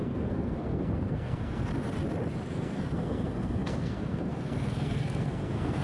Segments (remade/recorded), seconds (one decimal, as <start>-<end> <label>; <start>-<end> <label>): 0.0-1.7 remade; 1.7-2.5 recorded; 2.5-5.8 remade